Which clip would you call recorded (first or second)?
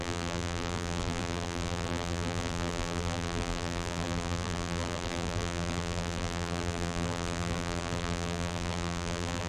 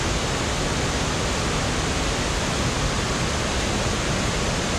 second